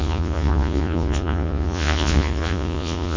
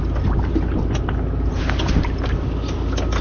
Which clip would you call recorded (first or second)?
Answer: second